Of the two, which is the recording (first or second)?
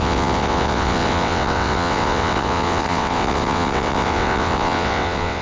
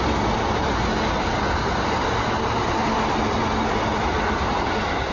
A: second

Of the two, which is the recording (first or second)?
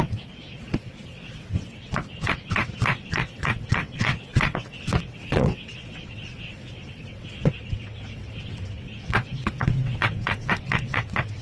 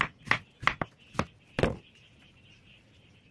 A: second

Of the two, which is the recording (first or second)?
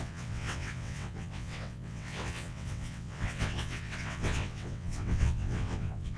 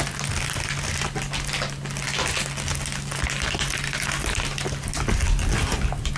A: second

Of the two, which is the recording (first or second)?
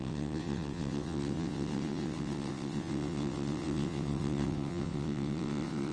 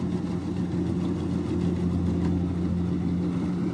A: second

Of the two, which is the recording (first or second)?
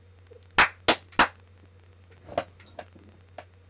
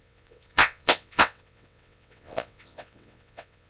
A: first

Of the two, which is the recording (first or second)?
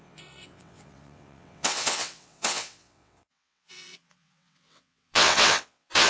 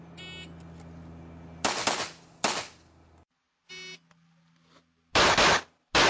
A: second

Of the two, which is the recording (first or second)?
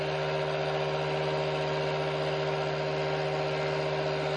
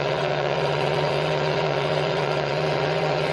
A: first